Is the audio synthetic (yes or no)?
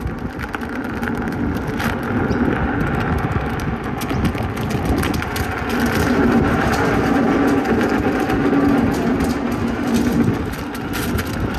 no